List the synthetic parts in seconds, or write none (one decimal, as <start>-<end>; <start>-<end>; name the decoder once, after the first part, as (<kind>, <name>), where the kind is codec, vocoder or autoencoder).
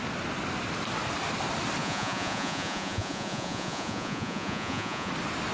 1.8-5.1 (vocoder, Vocos)